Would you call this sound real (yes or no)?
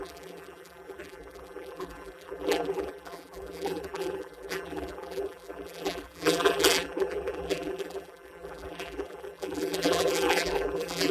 no